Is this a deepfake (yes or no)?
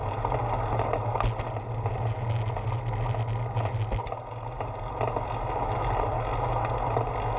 no